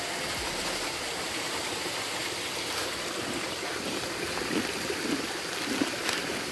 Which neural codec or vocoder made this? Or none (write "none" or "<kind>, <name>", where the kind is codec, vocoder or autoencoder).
none